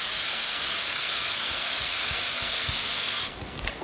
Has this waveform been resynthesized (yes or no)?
yes